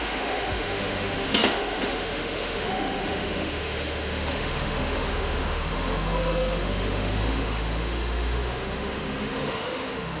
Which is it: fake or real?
fake